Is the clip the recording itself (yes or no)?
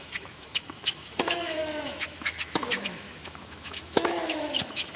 no